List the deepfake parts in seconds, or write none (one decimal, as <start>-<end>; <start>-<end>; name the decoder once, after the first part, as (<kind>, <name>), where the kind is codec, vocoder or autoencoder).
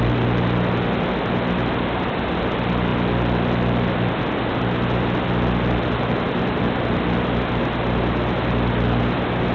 none